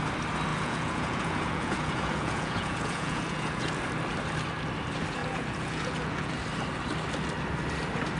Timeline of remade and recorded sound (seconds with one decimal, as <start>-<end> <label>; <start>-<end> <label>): 0.0-0.5 recorded; 0.5-3.8 remade; 3.8-5.2 recorded; 5.2-6.3 remade; 6.3-8.2 recorded